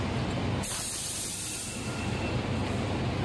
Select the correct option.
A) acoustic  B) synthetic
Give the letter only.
A